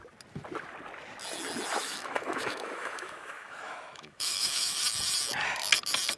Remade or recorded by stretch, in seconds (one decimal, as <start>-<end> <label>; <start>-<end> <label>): 0.0-1.8 recorded; 1.8-4.8 remade; 4.8-6.2 recorded